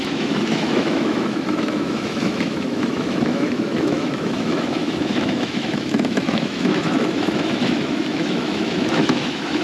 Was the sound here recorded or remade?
remade